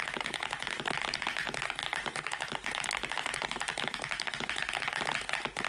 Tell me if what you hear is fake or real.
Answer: real